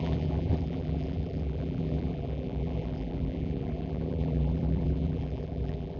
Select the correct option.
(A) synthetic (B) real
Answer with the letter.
A